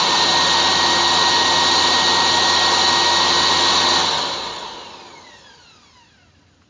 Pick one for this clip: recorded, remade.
recorded